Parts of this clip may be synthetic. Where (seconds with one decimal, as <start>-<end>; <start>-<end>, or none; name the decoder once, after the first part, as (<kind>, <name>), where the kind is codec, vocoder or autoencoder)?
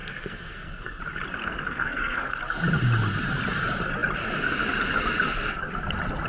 0.0-1.0 (codec, SNAC); 1.4-2.4